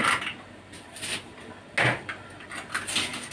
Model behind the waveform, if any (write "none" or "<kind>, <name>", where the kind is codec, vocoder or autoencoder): none